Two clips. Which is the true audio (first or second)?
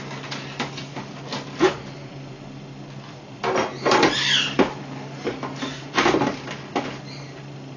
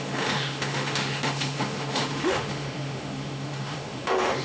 first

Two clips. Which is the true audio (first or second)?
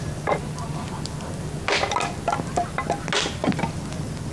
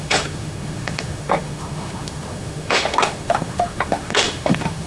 first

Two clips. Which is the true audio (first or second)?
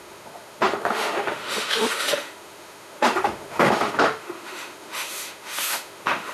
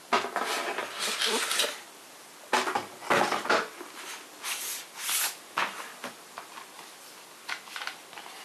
second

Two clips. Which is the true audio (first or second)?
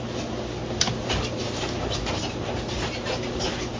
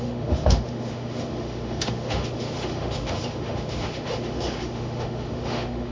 first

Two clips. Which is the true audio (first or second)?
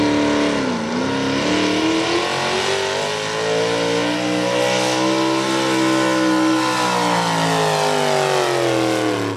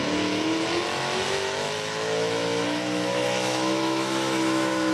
first